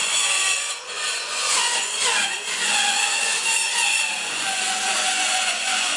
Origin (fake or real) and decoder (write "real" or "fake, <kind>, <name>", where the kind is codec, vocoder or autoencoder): fake, vocoder, Vocos